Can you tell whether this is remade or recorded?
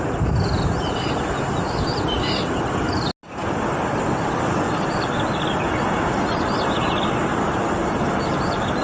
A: recorded